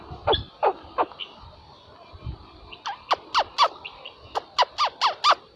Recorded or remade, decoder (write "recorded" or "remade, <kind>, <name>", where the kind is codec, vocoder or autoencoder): recorded